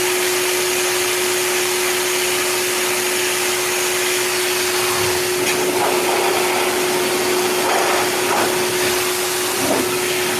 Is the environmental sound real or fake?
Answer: real